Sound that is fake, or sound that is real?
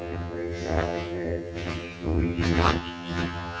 fake